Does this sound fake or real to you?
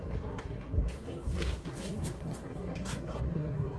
fake